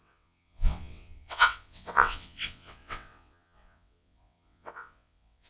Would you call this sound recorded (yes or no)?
no